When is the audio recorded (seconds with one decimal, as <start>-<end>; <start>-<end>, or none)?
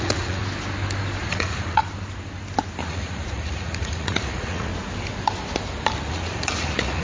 0.4-1.2; 1.8-2.8; 4.7-6.1